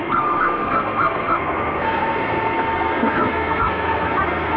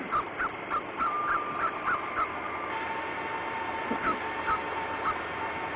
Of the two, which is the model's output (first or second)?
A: first